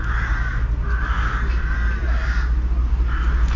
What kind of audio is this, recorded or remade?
recorded